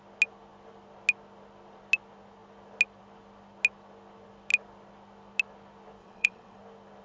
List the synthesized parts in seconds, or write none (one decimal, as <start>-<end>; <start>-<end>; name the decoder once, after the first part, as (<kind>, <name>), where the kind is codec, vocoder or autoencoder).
6.0-6.6 (vocoder, WaveNeXt)